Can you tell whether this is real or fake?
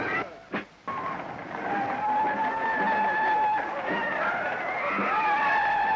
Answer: real